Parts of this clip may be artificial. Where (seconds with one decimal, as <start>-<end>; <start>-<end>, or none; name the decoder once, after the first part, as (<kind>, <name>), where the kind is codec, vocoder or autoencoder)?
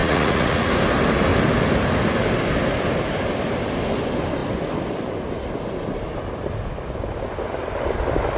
0.0-0.7 (vocoder, Vocos)